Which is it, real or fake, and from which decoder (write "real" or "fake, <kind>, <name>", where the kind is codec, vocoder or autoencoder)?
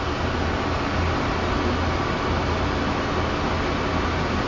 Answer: real